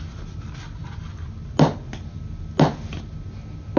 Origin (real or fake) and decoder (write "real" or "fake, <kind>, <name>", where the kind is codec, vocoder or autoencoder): real